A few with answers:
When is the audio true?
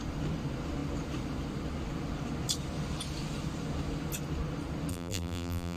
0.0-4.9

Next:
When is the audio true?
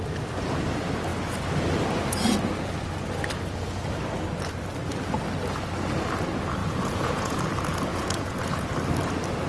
0.0-6.6; 7.4-7.9; 8.7-9.5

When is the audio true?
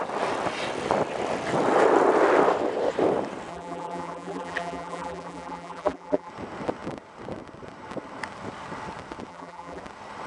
0.0-3.5; 6.3-9.3; 9.8-10.3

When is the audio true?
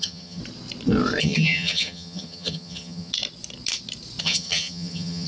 0.4-1.2; 3.1-4.2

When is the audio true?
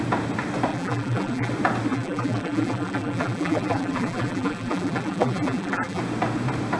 0.0-0.7; 1.5-1.9; 6.0-6.8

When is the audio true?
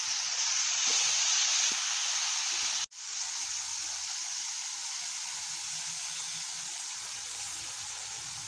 1.5-3.0; 3.7-6.6